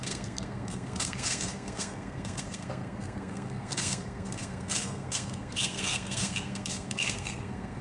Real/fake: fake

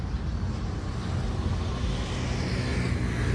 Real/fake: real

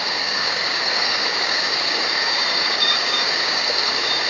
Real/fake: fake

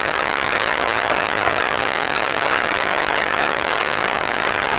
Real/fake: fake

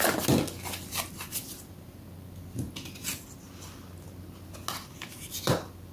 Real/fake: real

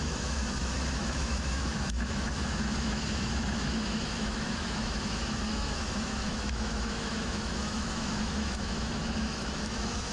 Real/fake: fake